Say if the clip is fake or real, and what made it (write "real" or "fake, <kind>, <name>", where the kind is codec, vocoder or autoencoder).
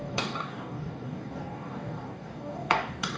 fake, codec, DAC